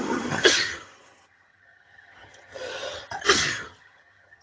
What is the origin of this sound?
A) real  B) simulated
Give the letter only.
B